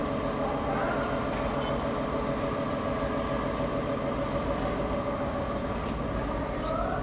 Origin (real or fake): real